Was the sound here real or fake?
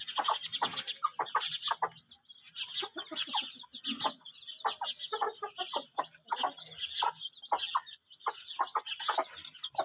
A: real